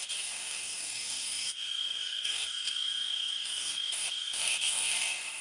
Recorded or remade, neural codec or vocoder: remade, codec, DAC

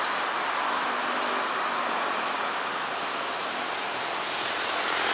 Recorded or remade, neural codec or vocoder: recorded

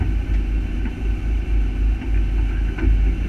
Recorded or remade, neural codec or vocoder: recorded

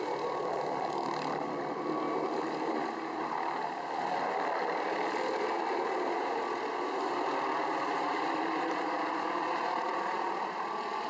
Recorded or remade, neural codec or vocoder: remade, vocoder, BigVGAN v2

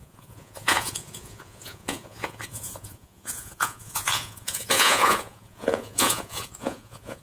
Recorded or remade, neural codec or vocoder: remade, vocoder, Vocos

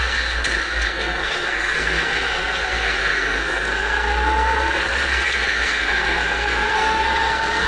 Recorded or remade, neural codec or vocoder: remade, codec, SNAC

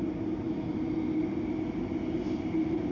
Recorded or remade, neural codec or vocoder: recorded